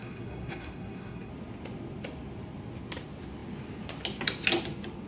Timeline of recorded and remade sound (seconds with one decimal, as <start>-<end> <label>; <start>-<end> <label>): 0.0-1.3 remade; 1.3-5.1 recorded